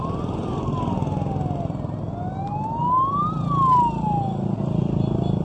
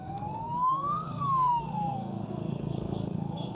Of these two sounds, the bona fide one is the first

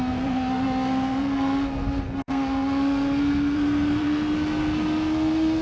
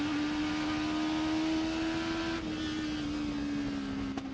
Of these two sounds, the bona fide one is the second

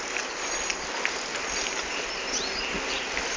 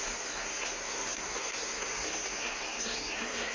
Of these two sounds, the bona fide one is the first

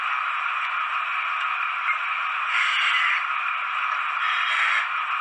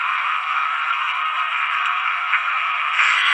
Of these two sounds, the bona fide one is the first